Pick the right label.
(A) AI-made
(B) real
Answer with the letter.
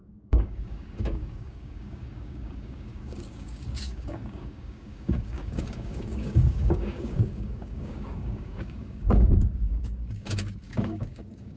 A